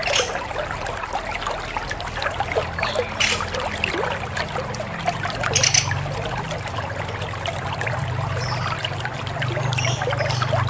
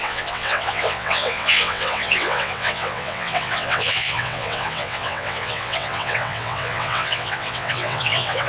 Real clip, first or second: first